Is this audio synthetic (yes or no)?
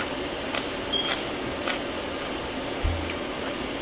no